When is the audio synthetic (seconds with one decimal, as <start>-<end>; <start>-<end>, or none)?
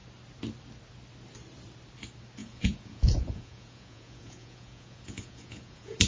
2.4-6.1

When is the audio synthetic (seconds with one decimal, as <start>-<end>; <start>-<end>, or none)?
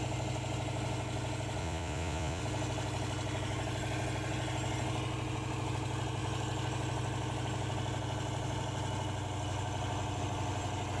1.6-2.4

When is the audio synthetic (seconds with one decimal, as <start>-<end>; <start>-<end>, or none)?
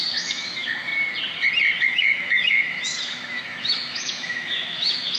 0.0-0.9; 1.8-5.2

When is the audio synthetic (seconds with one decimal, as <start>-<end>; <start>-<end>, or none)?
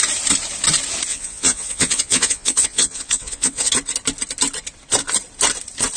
1.1-3.7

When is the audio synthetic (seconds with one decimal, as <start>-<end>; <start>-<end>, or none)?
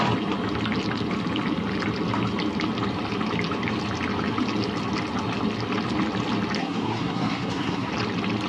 6.6-7.9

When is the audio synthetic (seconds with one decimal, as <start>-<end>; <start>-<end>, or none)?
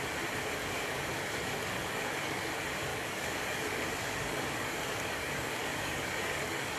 0.6-2.5; 2.9-6.8